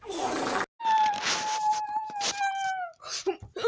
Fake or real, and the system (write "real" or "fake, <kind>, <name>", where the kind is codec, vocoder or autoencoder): real